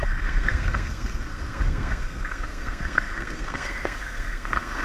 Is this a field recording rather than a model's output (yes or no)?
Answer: no